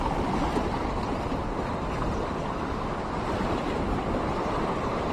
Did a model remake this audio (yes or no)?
no